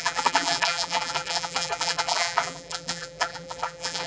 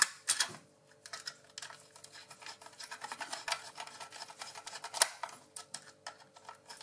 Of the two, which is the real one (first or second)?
second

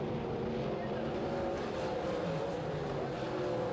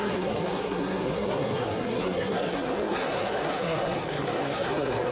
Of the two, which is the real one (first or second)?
first